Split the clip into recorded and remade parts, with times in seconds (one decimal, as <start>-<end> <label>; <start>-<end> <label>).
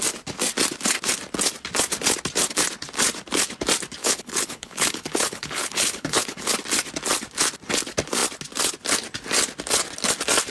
0.0-4.0 recorded; 4.0-6.5 remade; 6.5-10.5 recorded